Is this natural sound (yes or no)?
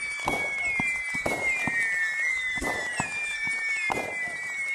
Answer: yes